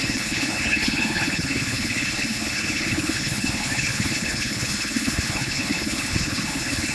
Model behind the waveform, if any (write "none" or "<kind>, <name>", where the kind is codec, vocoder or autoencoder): codec, HILCodec